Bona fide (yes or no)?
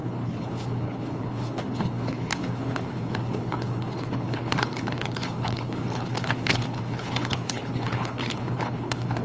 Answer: no